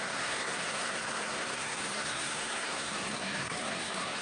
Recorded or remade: remade